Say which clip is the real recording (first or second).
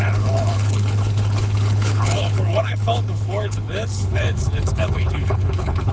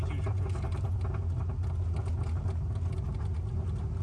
second